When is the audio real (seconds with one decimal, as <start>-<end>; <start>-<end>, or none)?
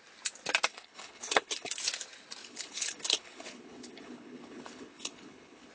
0.0-0.7; 1.8-2.4